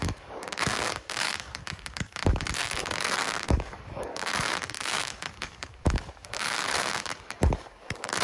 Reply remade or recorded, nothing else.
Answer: remade